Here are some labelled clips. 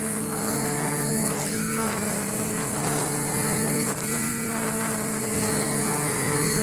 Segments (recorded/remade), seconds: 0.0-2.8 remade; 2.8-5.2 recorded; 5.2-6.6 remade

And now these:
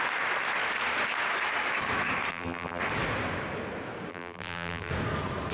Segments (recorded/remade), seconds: 0.0-2.3 recorded; 2.3-2.8 remade; 2.8-4.1 recorded; 4.1-4.9 remade; 4.9-5.5 recorded

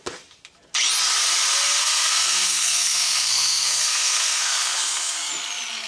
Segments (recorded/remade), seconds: 0.0-1.8 recorded; 1.8-5.3 remade; 5.3-5.9 recorded

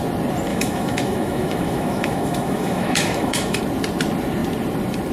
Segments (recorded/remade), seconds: 0.0-0.5 recorded; 0.5-3.6 remade; 3.6-5.1 recorded